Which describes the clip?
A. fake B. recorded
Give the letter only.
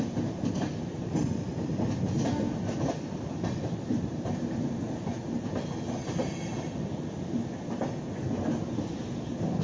B